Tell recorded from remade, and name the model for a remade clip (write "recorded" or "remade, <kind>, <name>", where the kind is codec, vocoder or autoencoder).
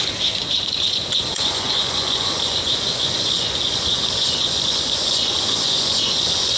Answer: remade, vocoder, Vocos